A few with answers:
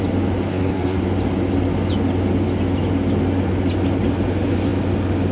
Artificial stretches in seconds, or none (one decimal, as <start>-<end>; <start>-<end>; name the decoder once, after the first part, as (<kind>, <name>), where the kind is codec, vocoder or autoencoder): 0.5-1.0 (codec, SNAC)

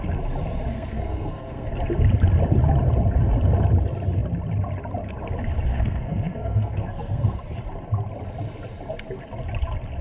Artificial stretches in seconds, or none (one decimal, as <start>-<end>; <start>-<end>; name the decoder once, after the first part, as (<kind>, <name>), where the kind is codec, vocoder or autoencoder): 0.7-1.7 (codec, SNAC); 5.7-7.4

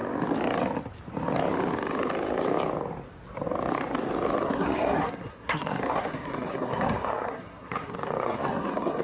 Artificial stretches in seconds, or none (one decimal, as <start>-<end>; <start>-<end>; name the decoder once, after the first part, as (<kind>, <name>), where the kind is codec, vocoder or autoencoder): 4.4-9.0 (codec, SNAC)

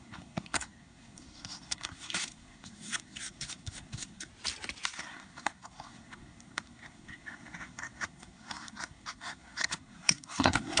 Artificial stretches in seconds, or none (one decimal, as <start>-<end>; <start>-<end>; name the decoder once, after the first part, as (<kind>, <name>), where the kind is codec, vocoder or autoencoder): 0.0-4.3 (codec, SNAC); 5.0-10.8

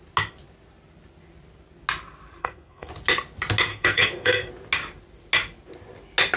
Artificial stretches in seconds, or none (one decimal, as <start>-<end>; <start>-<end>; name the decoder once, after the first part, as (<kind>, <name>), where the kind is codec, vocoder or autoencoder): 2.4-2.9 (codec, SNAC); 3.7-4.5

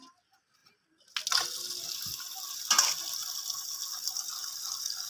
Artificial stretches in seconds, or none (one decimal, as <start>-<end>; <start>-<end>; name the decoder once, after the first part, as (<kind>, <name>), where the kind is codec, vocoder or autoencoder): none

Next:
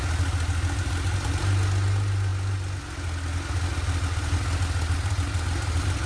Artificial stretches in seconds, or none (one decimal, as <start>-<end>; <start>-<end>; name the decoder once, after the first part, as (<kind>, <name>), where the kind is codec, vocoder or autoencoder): none

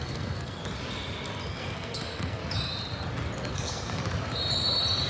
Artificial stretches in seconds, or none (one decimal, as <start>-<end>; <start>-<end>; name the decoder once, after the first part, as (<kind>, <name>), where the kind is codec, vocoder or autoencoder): 0.0-0.6 (codec, SNAC); 1.5-2.4; 3.5-4.0